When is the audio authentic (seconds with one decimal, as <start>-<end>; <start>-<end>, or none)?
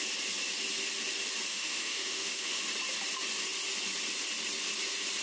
0.0-1.5; 2.6-5.2